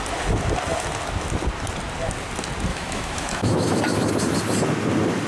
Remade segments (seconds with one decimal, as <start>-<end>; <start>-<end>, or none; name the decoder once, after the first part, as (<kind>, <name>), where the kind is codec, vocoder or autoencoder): 2.7-3.8 (autoencoder, DAC-VAE)